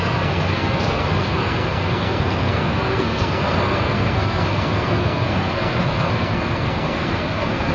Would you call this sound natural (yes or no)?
no